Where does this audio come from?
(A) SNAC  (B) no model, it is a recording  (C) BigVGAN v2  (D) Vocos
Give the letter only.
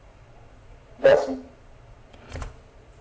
D